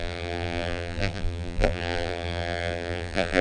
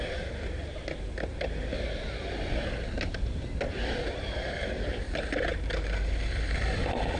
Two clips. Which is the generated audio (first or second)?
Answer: first